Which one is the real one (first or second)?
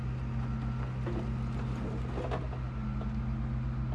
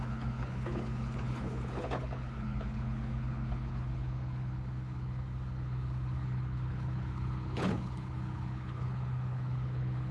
first